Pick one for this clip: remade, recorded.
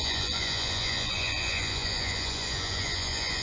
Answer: remade